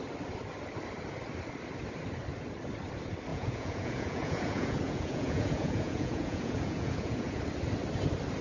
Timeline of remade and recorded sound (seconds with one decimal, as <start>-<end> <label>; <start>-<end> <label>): 0.0-3.3 recorded; 3.3-7.4 remade; 7.4-8.4 recorded